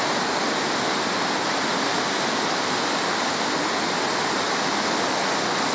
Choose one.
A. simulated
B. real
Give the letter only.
B